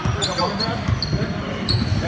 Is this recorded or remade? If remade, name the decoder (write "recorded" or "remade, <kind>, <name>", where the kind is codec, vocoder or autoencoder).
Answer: recorded